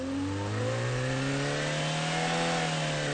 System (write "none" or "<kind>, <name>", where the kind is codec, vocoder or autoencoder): none